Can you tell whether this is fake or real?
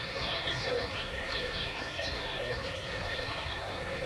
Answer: fake